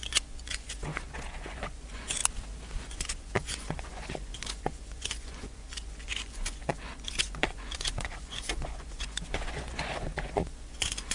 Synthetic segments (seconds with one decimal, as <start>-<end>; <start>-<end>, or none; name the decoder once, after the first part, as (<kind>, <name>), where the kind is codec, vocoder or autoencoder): 0.0-2.2 (vocoder, Vocos); 2.8-11.1